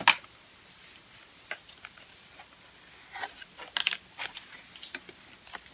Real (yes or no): yes